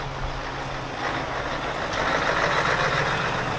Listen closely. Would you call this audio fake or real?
real